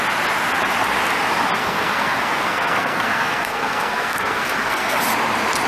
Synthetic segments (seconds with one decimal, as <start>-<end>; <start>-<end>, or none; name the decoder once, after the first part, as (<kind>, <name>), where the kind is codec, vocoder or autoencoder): 1.6-5.0 (codec, SNAC)